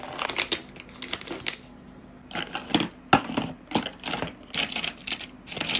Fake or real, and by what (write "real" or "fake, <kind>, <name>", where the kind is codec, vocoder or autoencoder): real